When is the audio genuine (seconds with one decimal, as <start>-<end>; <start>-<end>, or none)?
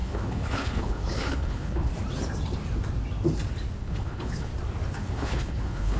1.9-3.8; 4.5-5.0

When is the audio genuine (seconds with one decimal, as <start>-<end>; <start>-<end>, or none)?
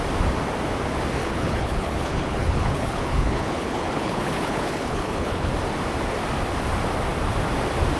0.0-1.2; 5.5-8.0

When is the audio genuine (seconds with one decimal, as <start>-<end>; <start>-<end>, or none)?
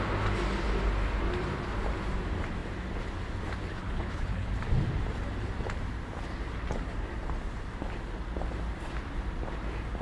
0.0-3.7; 4.5-10.0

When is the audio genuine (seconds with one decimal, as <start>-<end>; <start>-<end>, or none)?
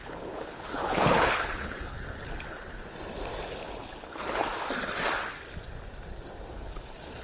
2.8-3.5; 4.4-6.5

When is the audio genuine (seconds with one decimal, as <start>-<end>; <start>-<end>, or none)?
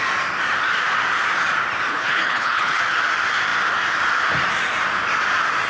0.0-1.9; 2.8-5.7